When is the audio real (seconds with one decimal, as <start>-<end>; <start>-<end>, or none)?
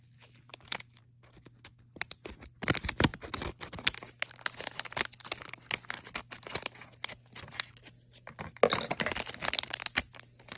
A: 0.0-10.6